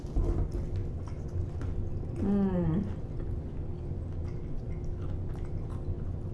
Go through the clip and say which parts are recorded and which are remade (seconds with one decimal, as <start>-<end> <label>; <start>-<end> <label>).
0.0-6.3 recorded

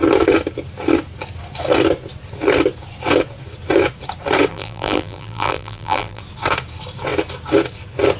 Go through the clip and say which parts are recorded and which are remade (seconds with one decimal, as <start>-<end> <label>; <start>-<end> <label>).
0.0-4.5 recorded; 4.5-6.2 remade; 6.2-8.2 recorded

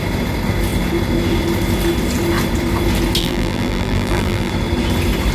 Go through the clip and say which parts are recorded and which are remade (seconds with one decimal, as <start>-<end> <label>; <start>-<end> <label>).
0.0-3.2 recorded; 3.2-4.5 remade; 4.5-5.3 recorded

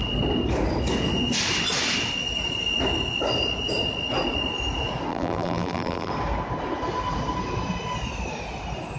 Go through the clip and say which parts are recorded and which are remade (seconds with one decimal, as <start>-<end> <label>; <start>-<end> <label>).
0.0-5.1 recorded; 5.1-6.1 remade; 6.1-9.0 recorded

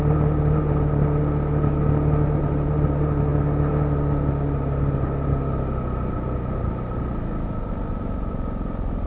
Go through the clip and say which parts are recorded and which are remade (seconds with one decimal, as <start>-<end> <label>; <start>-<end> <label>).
0.0-9.1 recorded